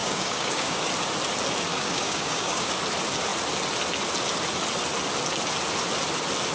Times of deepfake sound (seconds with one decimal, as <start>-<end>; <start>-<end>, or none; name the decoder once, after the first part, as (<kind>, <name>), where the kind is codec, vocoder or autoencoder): 0.0-0.9 (codec, DAC); 1.7-2.7